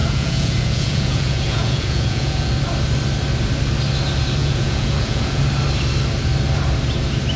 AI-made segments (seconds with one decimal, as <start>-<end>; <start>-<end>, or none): 0.0-2.5; 4.4-5.4